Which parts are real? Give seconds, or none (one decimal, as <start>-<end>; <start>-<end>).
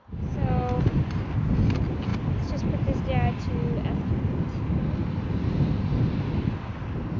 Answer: 0.0-7.2